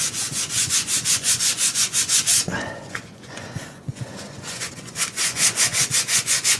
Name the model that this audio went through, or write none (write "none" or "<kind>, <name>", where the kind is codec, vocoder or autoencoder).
vocoder, Vocos